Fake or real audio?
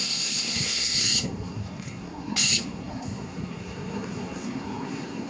fake